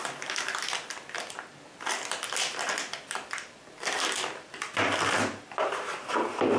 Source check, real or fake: real